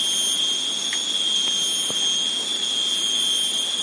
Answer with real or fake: real